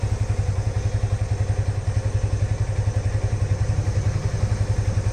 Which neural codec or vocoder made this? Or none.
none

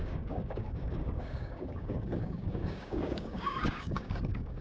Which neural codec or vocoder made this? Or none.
codec, DAC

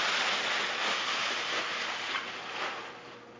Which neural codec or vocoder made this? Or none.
none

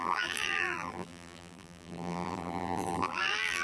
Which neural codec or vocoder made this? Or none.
vocoder, BigVGAN v2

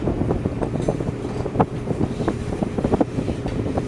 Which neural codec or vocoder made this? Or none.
vocoder, BigVGAN v2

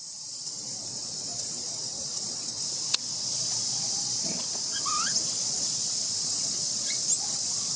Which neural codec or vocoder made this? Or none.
vocoder, Vocos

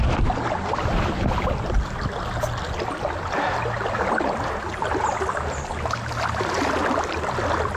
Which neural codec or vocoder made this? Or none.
none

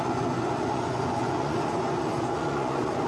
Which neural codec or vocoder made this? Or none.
vocoder, Vocos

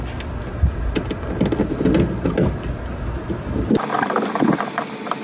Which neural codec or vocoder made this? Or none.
none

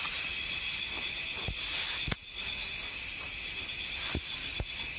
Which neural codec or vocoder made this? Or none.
none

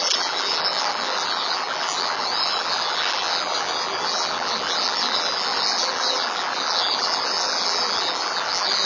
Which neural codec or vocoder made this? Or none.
vocoder, BigVGAN v2